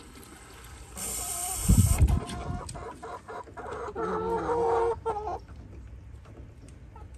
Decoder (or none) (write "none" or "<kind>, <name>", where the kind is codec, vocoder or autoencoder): none